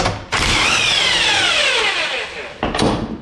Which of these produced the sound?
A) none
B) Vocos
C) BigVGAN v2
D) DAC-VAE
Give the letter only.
A